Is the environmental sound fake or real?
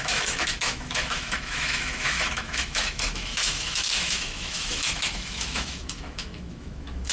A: fake